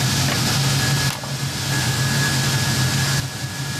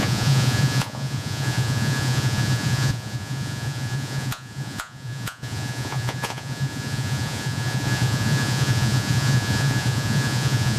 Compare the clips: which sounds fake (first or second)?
second